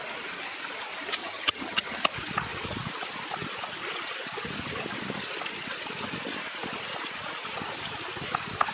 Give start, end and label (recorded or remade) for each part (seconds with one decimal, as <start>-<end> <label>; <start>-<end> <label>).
0.0-1.2 recorded; 1.2-2.0 remade; 2.0-8.7 recorded